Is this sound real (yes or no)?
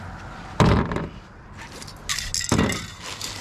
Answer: yes